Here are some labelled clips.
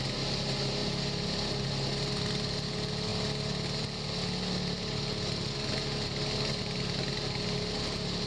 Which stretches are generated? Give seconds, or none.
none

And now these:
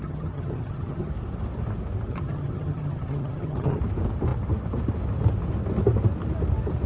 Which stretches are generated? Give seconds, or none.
0.0-1.1; 2.1-3.8

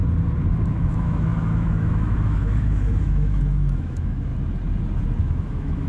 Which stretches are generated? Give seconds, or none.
0.7-4.3; 5.2-5.9

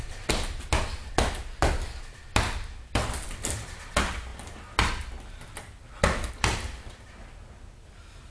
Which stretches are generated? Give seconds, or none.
none